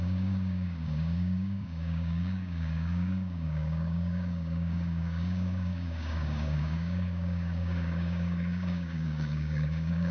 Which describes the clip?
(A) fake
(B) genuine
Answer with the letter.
A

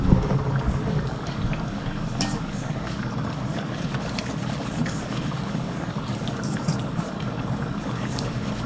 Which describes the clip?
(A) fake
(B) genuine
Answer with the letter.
A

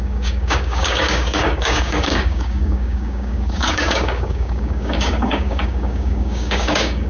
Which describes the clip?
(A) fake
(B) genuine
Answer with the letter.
A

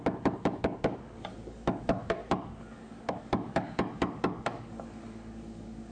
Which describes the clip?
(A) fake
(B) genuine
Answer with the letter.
A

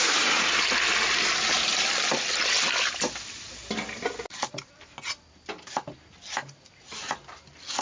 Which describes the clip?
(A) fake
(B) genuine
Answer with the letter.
B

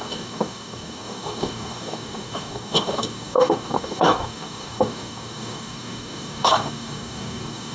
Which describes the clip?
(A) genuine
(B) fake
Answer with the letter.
B